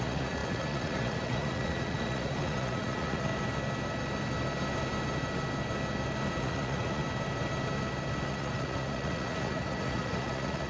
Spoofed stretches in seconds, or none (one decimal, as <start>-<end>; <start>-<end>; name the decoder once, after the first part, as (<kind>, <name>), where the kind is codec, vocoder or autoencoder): 0.0-3.3 (vocoder, Vocos); 6.4-7.0; 8.3-10.7